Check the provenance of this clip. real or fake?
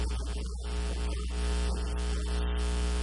real